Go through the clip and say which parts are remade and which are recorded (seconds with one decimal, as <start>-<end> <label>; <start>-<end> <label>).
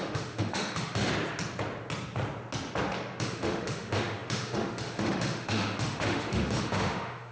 0.0-1.1 remade; 1.1-3.2 recorded; 3.2-7.3 remade